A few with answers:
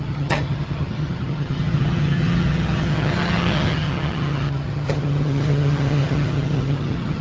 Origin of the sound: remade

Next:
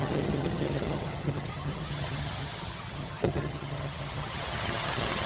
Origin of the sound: remade